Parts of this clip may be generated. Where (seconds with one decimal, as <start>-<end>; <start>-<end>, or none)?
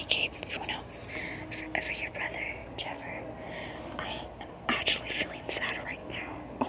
2.6-3.2; 6.0-6.7